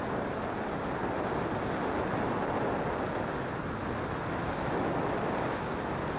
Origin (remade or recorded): recorded